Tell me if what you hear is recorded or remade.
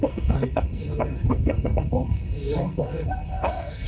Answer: remade